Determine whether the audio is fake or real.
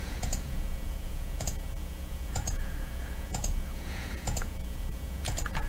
fake